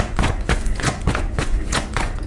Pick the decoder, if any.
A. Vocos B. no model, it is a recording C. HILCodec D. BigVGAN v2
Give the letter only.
A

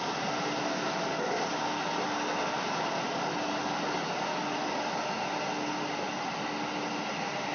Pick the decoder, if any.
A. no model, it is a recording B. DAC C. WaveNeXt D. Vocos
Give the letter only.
A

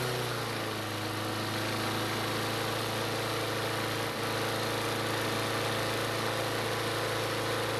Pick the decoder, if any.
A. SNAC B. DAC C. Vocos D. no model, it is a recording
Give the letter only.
D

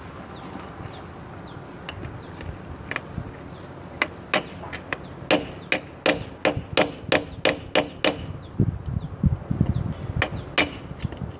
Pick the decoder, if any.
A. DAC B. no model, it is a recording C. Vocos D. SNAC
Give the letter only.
B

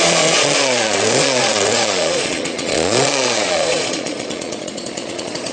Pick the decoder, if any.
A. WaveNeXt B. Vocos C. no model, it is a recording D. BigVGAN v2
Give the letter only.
B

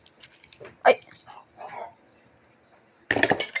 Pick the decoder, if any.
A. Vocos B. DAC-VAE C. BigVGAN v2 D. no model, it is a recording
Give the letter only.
D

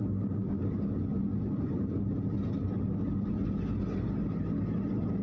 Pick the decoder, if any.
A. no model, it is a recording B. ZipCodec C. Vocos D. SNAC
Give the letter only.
A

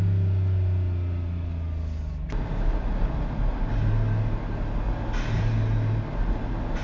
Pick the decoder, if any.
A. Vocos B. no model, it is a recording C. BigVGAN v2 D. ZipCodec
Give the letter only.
B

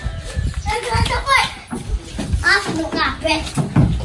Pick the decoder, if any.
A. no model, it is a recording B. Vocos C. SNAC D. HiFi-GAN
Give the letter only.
A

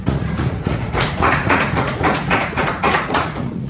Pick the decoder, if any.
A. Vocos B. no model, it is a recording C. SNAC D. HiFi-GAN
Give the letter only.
A